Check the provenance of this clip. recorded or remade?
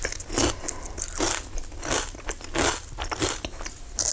recorded